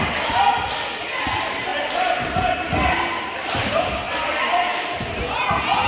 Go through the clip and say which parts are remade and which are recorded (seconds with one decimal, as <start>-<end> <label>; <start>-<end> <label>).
0.0-5.9 recorded